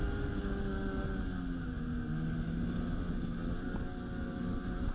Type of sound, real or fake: real